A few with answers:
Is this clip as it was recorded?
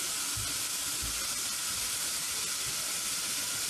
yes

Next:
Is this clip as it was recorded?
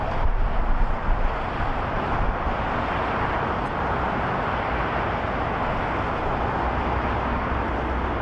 yes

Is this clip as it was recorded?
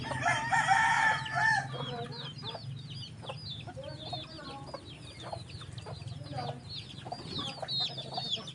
yes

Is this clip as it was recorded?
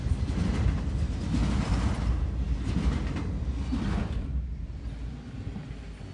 yes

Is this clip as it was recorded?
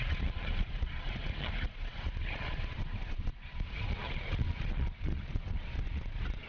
no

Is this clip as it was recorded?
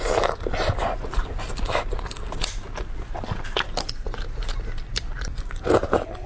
yes